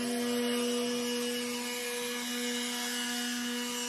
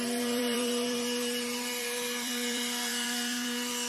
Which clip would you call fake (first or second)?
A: second